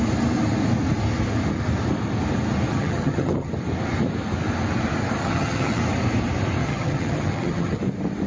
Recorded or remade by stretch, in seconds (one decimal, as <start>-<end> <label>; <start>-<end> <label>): 0.0-2.7 recorded; 2.7-3.5 remade; 3.5-5.2 recorded; 5.2-5.8 remade; 5.8-6.6 recorded; 6.6-7.8 remade; 7.8-8.3 recorded